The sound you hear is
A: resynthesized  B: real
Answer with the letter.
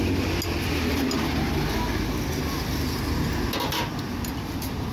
B